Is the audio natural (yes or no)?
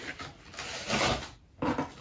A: yes